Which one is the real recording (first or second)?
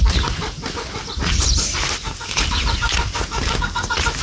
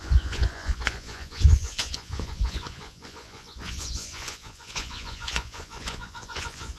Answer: first